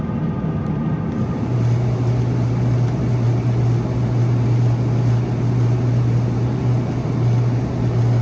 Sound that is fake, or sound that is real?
real